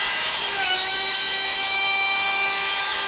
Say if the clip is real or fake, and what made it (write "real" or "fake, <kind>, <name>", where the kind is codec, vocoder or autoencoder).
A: fake, autoencoder, DAC-VAE